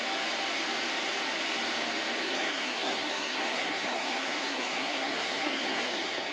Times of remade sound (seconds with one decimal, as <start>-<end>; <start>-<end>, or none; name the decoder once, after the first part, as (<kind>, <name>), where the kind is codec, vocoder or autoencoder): 2.2-6.3 (codec, SNAC)